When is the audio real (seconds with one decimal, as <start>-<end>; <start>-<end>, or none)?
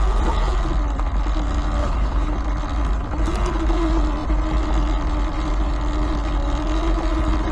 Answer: 0.0-1.8; 2.3-7.5